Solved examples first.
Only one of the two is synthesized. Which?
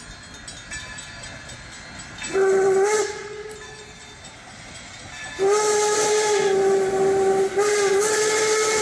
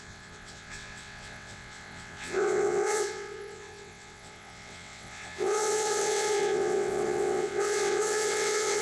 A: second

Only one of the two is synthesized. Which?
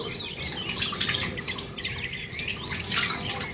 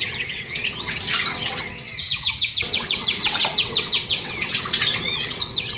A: second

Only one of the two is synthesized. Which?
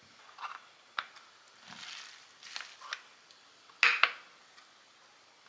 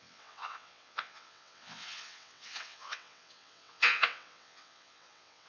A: second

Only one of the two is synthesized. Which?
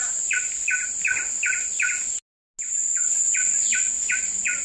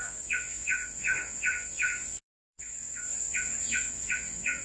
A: second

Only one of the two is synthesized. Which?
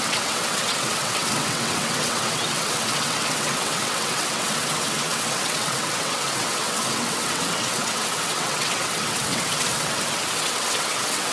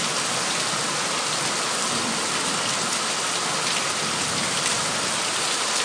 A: first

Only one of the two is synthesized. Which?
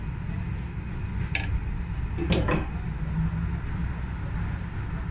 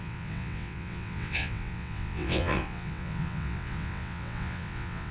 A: second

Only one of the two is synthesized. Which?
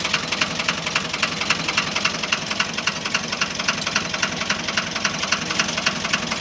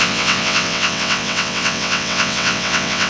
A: second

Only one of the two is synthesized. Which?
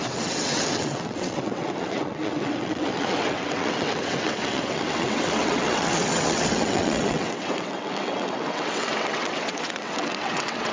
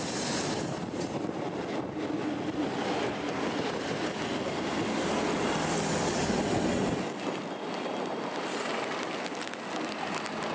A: first